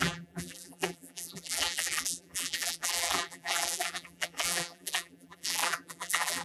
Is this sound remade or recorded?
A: remade